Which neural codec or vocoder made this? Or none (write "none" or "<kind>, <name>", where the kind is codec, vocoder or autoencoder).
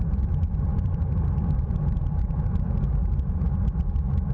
none